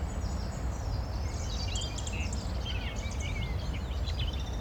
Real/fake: real